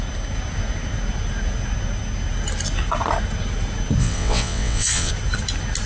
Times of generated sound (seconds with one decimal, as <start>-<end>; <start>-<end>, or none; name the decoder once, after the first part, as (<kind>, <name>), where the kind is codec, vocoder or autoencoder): 4.0-5.1 (vocoder, WaveNeXt)